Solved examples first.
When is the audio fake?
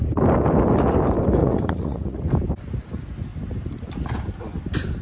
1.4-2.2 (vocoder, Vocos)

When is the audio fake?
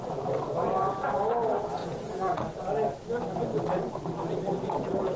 1.8-2.6 (vocoder, Vocos)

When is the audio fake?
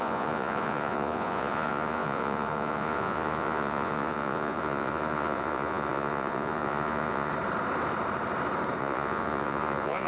0.0-7.3 (vocoder, Vocos); 8.8-10.1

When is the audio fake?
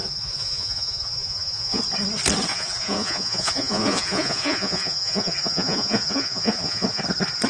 0.0-1.8 (vocoder, Vocos); 2.5-7.0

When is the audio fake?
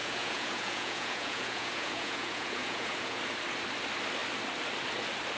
0.0-3.2 (vocoder, Vocos)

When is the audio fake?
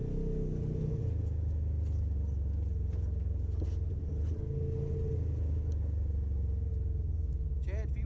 none